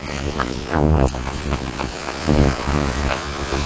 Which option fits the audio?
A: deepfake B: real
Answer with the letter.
A